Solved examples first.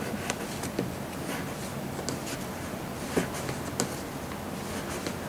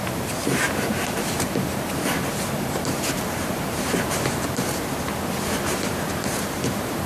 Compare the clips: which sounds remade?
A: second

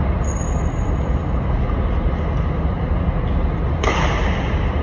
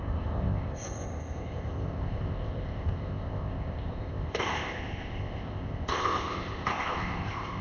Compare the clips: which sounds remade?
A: second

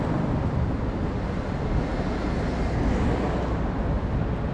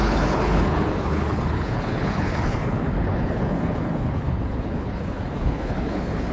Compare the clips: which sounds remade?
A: second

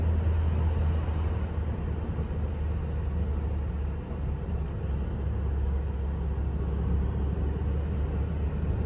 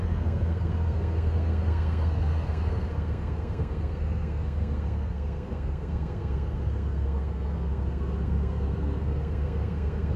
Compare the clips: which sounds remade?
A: second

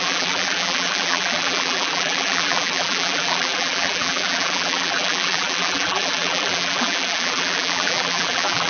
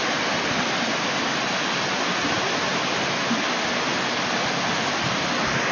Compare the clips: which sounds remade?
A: first